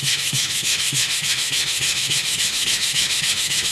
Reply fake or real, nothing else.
fake